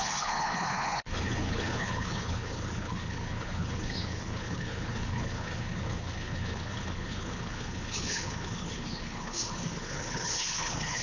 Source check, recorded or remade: remade